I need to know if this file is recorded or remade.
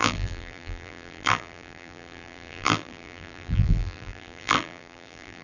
remade